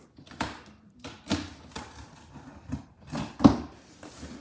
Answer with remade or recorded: recorded